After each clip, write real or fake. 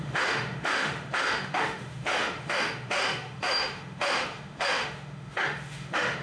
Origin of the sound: fake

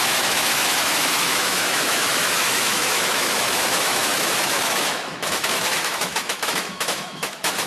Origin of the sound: fake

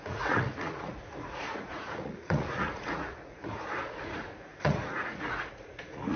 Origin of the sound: fake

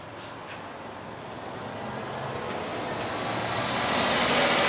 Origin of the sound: real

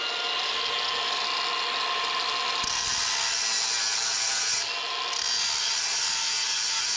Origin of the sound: real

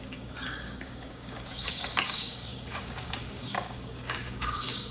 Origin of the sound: fake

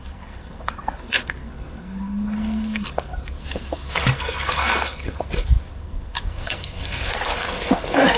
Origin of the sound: fake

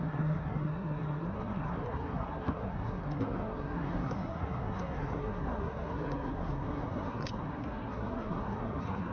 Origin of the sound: fake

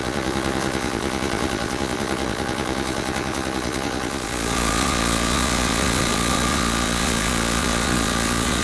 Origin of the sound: fake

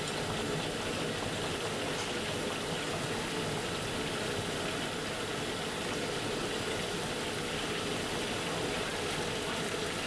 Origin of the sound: real